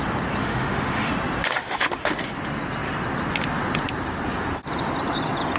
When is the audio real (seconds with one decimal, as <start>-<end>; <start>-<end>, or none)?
0.0-0.4; 1.1-1.6; 2.1-5.6